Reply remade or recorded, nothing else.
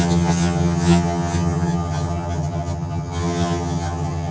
remade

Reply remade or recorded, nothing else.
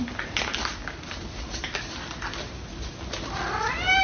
recorded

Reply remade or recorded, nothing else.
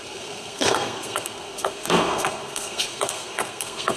remade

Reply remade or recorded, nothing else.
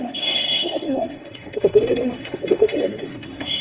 remade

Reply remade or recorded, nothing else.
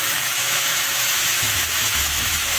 remade